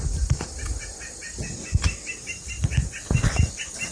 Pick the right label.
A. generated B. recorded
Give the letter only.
B